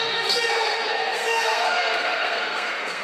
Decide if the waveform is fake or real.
fake